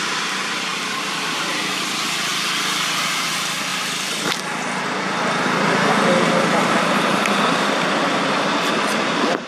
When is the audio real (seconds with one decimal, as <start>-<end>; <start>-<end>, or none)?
0.0-0.7; 1.5-9.5